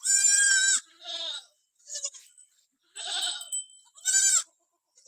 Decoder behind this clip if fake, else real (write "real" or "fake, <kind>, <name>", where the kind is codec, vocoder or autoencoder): real